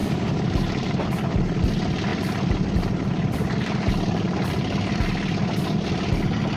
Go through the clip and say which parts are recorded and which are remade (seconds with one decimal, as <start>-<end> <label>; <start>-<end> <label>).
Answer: 0.0-1.2 remade; 1.2-2.1 recorded; 2.1-2.6 remade; 2.6-6.6 recorded